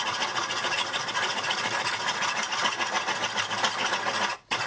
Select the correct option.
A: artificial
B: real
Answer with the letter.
B